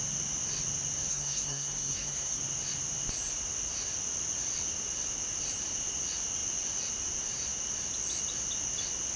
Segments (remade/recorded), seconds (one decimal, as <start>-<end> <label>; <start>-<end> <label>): 0.0-1.1 recorded; 1.1-2.4 remade; 2.4-9.2 recorded